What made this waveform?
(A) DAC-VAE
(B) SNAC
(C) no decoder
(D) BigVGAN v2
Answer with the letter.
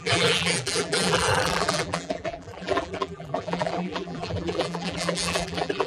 D